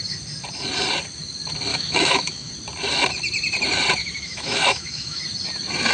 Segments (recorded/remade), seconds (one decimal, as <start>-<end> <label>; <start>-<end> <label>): 0.0-1.7 recorded; 1.7-2.5 remade; 2.5-4.0 recorded; 4.0-5.2 remade; 5.2-5.9 recorded